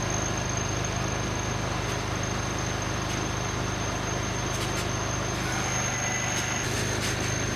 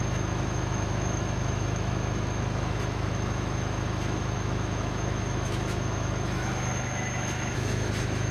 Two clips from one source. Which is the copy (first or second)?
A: second